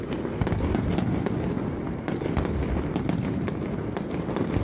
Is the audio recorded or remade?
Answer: recorded